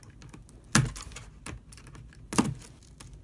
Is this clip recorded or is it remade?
recorded